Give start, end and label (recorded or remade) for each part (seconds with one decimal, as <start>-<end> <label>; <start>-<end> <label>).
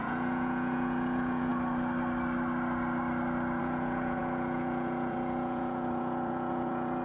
0.0-1.5 remade; 1.5-3.6 recorded; 3.6-7.0 remade